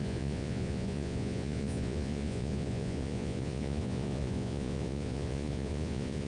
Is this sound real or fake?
fake